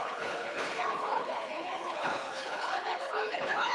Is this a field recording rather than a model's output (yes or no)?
no